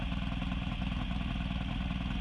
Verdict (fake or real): real